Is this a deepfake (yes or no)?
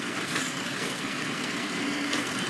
yes